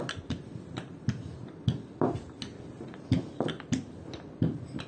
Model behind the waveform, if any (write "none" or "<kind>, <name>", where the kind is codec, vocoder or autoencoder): none